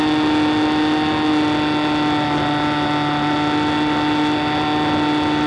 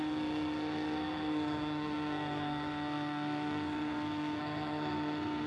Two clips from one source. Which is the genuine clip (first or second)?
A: first